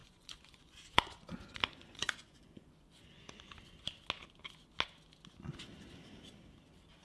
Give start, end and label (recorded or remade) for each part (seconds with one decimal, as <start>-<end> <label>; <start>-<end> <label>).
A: 0.0-3.5 remade; 3.5-7.0 recorded